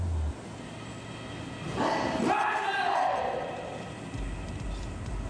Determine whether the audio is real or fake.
real